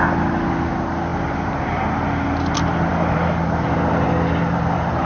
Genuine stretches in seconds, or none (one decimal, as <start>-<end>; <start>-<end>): 0.0-2.9